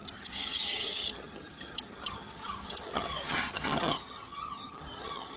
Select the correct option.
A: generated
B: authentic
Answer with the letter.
A